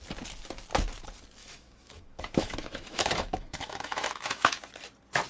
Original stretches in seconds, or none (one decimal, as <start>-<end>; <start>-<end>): 0.0-1.4; 4.6-5.3